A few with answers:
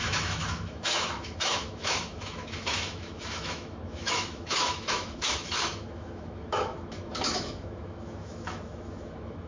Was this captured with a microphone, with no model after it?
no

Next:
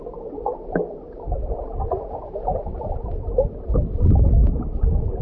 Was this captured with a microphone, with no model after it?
yes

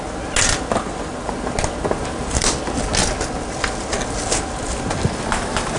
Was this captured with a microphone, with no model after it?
yes